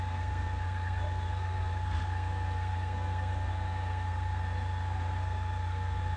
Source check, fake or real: fake